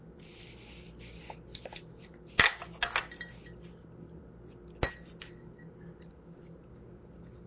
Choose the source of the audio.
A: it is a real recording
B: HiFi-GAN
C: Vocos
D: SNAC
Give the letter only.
A